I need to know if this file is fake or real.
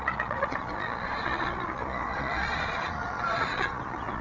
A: fake